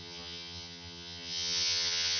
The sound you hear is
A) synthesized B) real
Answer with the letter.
A